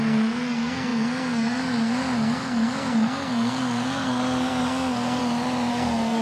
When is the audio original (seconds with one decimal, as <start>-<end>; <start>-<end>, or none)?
5.2-5.7